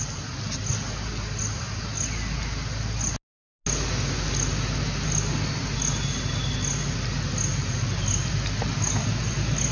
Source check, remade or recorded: recorded